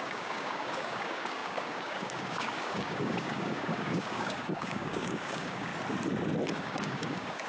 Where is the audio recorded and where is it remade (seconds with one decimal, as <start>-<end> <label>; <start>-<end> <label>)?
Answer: 0.0-5.7 remade; 5.7-6.5 recorded; 6.5-7.5 remade